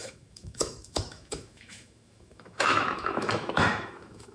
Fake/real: fake